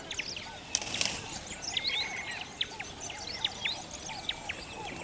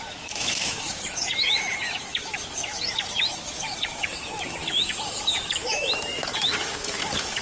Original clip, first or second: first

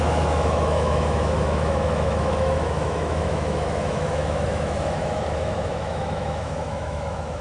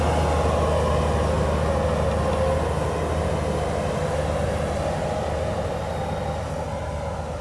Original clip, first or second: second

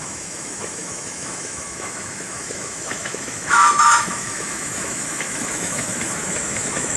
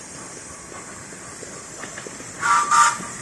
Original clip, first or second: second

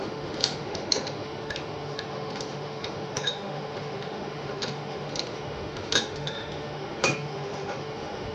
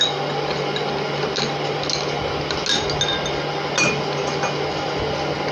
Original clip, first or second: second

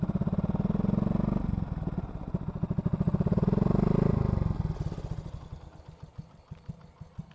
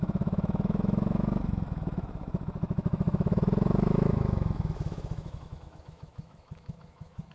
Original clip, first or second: first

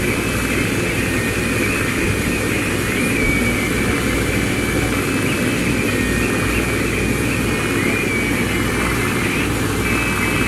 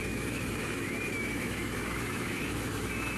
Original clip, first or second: first